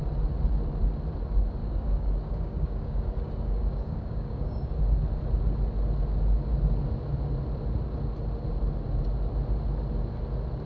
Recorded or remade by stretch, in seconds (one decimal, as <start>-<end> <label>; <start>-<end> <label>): 0.0-1.6 recorded; 1.6-4.8 remade; 4.8-10.7 recorded